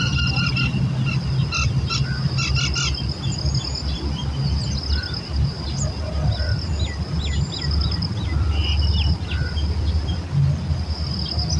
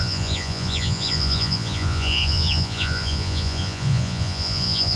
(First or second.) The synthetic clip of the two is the second